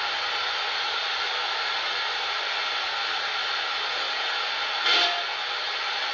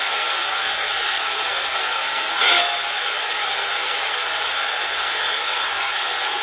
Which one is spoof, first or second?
second